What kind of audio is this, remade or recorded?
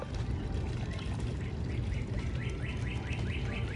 recorded